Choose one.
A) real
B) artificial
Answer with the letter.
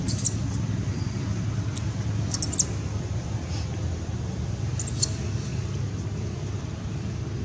A